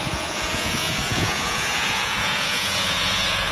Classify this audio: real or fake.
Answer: fake